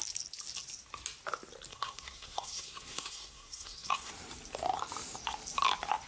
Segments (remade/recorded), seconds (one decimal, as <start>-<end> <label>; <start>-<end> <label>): 0.0-1.7 recorded; 1.7-4.1 remade; 4.1-6.1 recorded